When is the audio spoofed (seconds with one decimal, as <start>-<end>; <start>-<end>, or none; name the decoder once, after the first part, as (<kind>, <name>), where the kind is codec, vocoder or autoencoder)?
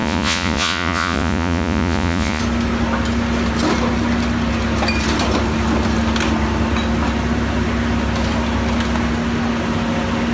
0.0-2.4 (vocoder, Vocos)